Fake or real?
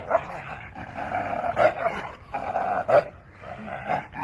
real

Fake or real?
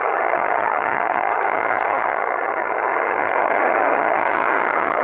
fake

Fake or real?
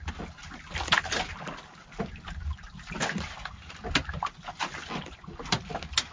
real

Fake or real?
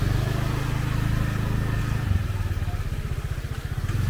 real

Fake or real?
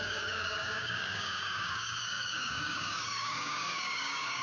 fake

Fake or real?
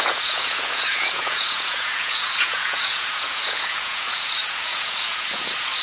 fake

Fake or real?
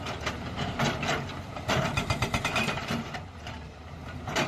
fake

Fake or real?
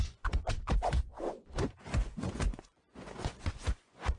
fake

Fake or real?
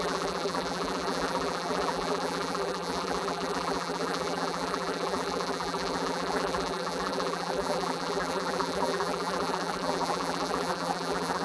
fake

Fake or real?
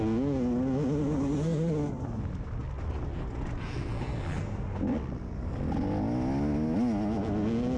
real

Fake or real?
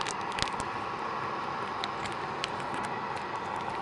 real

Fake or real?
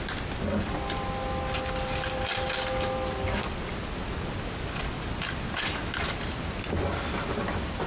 real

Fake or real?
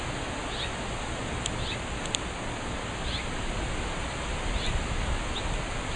real